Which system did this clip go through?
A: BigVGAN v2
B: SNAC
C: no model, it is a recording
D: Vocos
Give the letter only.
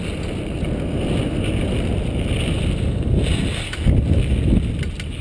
C